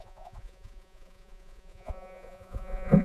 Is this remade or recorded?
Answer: remade